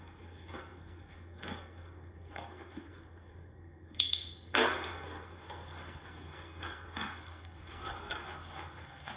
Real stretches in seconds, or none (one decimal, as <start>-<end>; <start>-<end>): none